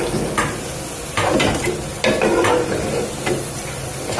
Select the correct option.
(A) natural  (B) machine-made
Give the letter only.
A